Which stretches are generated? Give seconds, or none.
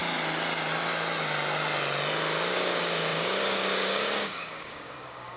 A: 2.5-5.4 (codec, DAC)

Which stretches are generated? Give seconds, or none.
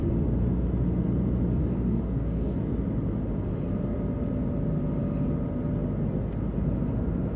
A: 1.6-2.6 (codec, DAC)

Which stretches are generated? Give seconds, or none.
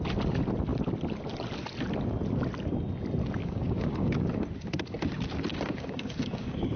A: 3.4-4.1 (codec, DAC); 5.5-6.8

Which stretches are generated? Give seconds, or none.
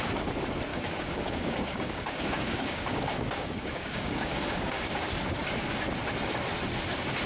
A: 0.7-5.1 (codec, DAC)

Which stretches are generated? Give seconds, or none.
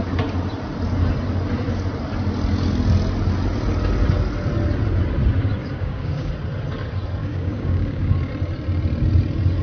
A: 5.6-6.3 (codec, DAC); 7.2-8.3